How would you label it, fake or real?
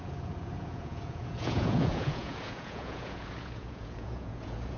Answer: fake